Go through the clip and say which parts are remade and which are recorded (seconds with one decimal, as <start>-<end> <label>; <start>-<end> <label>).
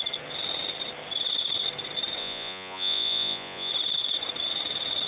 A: 0.0-2.2 recorded; 2.2-3.7 remade; 3.7-5.1 recorded